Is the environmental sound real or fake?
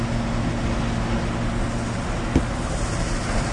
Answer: real